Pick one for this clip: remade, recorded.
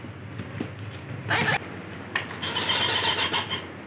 recorded